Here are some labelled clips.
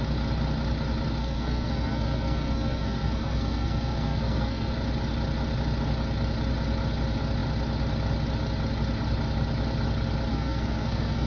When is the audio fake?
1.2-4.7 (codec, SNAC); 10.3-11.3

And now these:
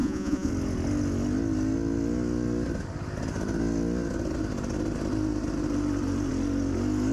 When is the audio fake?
0.0-0.5 (vocoder, Vocos)

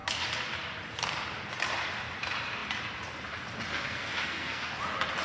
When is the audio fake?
3.7-4.8 (codec, SNAC)